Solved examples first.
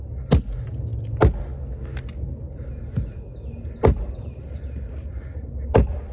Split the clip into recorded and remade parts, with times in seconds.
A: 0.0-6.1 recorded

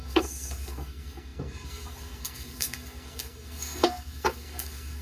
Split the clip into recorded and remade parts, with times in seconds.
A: 0.0-5.0 remade